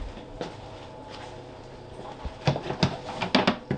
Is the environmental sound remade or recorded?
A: recorded